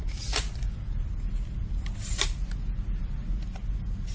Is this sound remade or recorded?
recorded